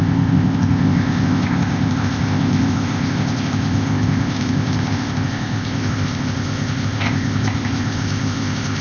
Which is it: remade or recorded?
remade